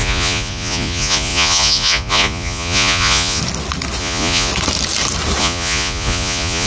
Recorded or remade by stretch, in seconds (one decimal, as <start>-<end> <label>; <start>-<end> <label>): 0.0-3.4 remade; 3.4-4.0 recorded; 4.0-4.5 remade; 4.5-5.4 recorded; 5.4-6.7 remade